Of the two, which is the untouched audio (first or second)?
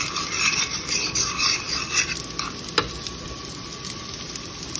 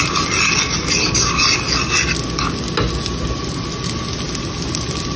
second